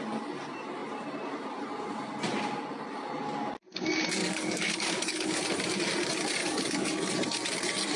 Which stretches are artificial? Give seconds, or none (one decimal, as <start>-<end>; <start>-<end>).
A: 4.2-5.4; 6.4-7.1

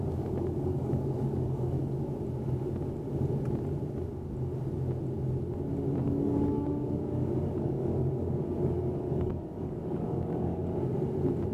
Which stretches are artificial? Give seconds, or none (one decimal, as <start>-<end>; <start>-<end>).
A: 0.0-1.8; 6.0-10.6

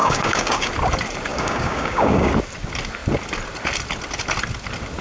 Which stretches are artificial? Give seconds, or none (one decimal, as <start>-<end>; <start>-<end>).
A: 0.0-0.7; 1.3-2.3

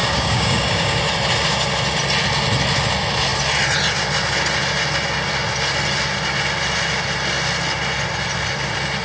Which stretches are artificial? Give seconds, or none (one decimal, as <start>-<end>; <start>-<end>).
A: 0.0-1.0

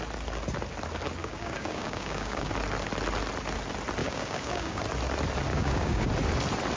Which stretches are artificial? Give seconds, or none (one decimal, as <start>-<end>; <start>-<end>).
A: 1.2-2.5; 4.0-4.8; 5.5-6.1

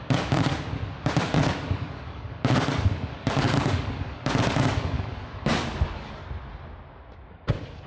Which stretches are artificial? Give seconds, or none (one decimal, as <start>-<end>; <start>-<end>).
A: 0.0-0.5; 1.2-6.2; 7.3-7.9